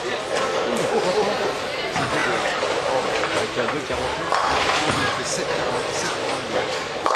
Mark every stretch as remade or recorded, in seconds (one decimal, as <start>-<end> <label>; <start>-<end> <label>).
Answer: 0.0-6.2 recorded; 6.2-7.2 remade

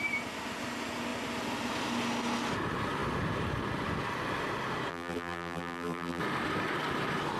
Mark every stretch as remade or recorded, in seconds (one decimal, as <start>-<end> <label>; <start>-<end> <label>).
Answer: 0.0-4.9 recorded; 4.9-6.2 remade; 6.2-7.4 recorded

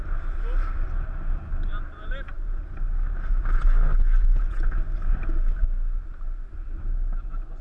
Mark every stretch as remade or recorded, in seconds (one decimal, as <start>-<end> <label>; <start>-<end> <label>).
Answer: 0.0-7.6 recorded

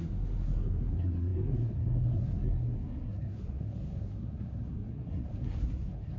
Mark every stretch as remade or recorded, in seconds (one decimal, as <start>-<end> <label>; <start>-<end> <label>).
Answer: 0.0-6.2 remade

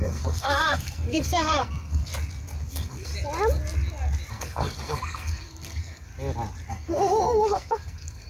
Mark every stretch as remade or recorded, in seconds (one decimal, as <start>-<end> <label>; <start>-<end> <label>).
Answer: 0.0-2.1 remade; 2.1-2.7 recorded; 2.7-3.1 remade; 3.1-4.3 recorded; 4.3-6.1 remade; 6.1-6.7 recorded; 6.7-8.3 remade